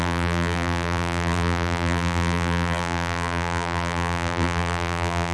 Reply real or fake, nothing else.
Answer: fake